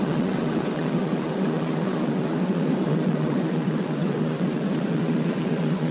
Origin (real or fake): fake